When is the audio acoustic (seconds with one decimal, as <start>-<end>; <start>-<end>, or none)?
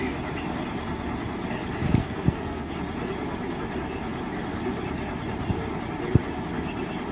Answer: 0.0-2.0; 2.7-7.1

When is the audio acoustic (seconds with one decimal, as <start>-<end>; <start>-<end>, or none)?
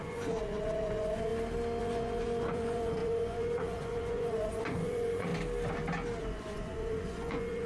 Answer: 1.3-1.8; 5.3-6.2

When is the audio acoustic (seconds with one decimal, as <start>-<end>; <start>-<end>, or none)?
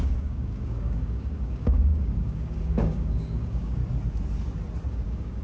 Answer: 3.8-4.9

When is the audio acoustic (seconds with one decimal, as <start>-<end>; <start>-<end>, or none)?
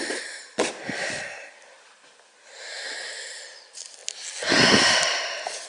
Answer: 4.0-4.7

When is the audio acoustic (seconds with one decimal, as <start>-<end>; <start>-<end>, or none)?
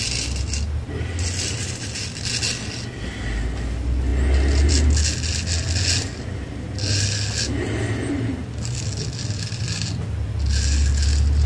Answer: 0.0-11.5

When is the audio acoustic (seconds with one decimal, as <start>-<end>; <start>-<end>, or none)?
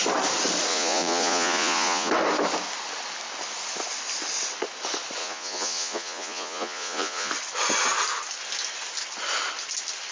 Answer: 0.0-0.7; 2.1-5.2; 7.3-10.1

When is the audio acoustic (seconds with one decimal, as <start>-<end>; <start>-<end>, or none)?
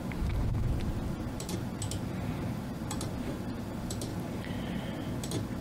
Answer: 0.0-5.6